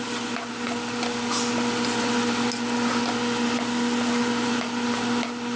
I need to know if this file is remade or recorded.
recorded